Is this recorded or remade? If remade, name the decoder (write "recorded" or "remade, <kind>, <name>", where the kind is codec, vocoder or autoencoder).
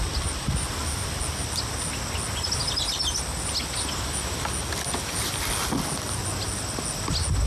recorded